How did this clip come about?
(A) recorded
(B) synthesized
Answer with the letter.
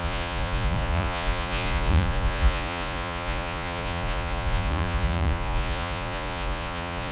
B